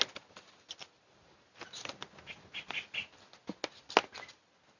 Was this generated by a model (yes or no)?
no